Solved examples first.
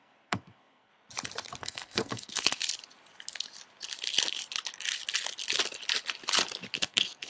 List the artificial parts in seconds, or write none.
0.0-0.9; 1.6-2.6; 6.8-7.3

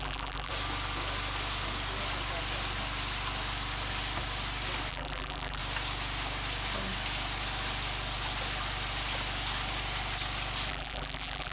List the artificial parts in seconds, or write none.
0.0-0.5; 4.9-5.6; 10.7-11.5

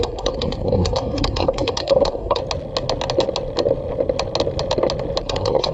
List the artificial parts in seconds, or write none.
0.0-2.4; 5.2-5.7

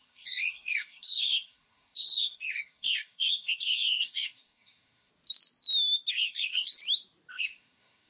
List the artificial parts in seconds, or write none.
0.0-5.1; 6.1-6.8; 7.3-8.1

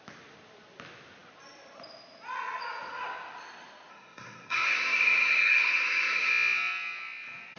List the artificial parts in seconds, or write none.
3.9-6.3

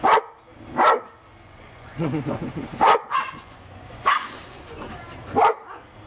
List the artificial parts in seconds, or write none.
1.3-4.9

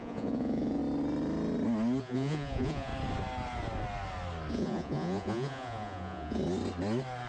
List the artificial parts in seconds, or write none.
0.0-0.8; 2.0-2.9; 4.5-6.4

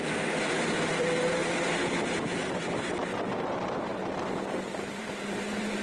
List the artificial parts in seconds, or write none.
0.0-3.9; 4.6-5.8